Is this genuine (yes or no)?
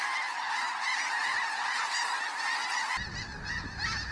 yes